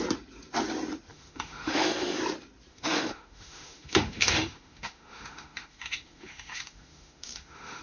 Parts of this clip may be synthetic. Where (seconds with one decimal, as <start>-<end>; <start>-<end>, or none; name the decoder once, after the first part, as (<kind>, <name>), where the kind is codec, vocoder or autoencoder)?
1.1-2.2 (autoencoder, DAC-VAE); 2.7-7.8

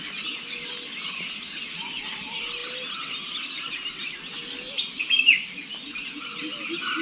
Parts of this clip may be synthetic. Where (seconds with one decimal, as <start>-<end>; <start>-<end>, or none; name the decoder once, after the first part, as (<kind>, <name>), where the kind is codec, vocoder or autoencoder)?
none

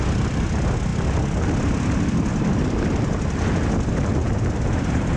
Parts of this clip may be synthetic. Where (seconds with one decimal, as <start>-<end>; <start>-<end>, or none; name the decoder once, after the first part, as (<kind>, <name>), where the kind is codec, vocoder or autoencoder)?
2.3-3.6 (vocoder, BigVGAN v2); 4.2-5.2

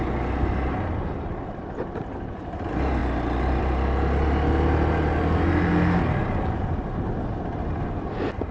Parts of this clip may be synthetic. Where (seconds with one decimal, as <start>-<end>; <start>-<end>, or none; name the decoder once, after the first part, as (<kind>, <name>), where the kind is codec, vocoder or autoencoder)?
none

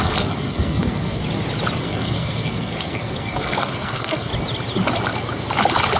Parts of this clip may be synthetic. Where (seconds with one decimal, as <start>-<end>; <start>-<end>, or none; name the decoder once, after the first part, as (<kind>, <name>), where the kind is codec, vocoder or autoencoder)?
0.0-1.2 (codec, SNAC); 1.8-4.3

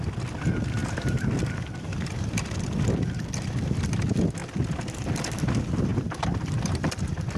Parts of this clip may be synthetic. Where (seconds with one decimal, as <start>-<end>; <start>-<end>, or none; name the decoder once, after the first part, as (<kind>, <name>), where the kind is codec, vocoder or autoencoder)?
5.9-6.9 (vocoder, BigVGAN v2)

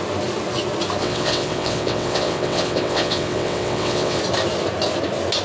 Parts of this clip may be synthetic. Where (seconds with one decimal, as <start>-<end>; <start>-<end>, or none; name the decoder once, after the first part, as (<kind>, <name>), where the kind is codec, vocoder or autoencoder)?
1.0-4.2 (vocoder, WaveNeXt)